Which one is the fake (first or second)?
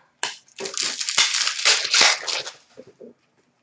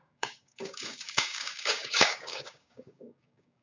second